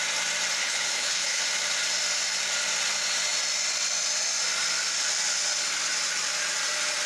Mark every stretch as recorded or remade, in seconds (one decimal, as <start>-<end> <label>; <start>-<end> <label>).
0.0-0.6 recorded; 0.6-1.4 remade; 1.4-7.1 recorded